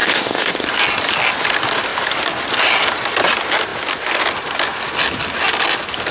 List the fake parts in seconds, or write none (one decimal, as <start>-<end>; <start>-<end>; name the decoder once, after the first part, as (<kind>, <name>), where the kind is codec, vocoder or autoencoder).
0.0-0.5 (autoencoder, DAC-VAE)